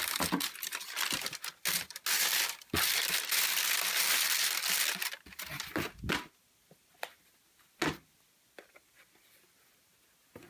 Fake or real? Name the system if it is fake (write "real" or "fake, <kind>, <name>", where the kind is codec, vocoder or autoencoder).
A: real